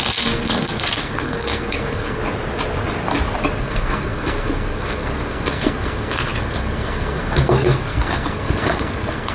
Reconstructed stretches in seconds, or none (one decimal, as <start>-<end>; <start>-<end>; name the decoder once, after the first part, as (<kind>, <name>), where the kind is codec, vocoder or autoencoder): 0.0-2.2 (codec, SNAC); 3.6-9.3